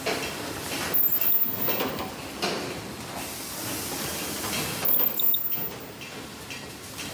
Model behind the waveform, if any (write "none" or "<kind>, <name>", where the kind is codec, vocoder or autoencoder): none